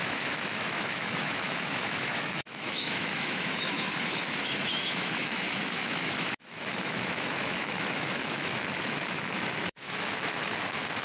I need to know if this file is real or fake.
fake